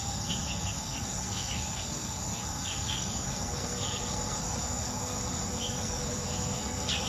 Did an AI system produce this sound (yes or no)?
yes